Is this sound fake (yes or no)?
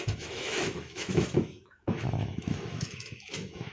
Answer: yes